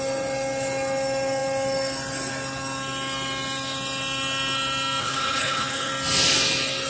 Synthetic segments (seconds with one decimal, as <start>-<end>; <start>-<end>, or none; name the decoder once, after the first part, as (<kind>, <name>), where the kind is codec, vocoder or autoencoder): 5.0-5.9 (codec, HILCodec)